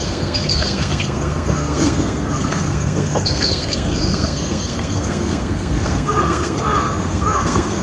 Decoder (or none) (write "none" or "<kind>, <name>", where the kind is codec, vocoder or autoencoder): codec, SNAC